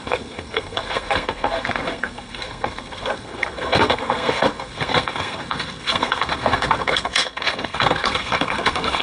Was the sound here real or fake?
fake